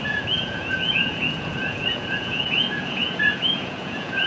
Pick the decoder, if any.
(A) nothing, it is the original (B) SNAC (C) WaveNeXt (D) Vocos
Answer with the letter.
D